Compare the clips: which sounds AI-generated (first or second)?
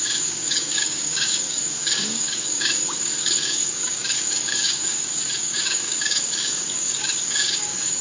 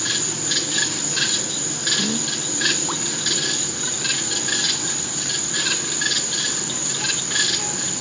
first